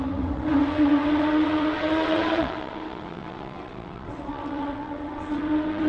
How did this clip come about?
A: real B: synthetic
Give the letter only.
B